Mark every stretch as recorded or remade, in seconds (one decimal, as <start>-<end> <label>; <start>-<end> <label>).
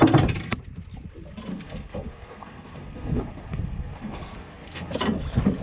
0.0-1.5 recorded; 1.5-4.9 remade; 4.9-5.6 recorded